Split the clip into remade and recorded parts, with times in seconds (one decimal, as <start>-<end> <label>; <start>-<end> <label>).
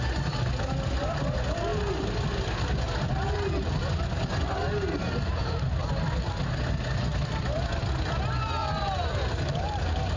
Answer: 0.0-7.1 recorded; 7.1-7.9 remade; 7.9-8.6 recorded; 8.6-10.2 remade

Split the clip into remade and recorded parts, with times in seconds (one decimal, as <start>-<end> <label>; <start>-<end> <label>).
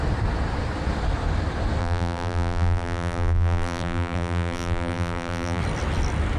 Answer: 0.0-1.8 recorded; 1.8-5.6 remade; 5.6-6.4 recorded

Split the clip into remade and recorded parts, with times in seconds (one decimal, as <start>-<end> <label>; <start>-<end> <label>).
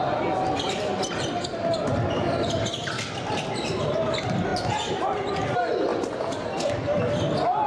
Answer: 0.0-5.9 recorded; 5.9-7.0 remade; 7.0-7.7 recorded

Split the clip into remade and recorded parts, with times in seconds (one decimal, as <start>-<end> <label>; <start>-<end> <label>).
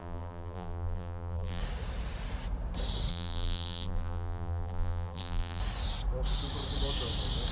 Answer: 0.0-1.6 remade; 1.6-3.1 recorded; 3.1-5.6 remade; 5.6-7.5 recorded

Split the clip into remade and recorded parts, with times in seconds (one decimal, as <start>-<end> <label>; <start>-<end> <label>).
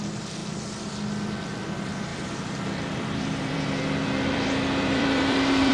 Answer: 0.0-0.4 recorded; 0.4-0.9 remade; 0.9-2.1 recorded; 2.1-5.7 remade